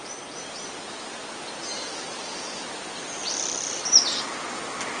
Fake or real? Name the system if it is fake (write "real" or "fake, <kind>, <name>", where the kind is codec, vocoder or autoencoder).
real